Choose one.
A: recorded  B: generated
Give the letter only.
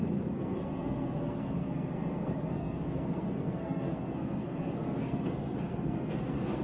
B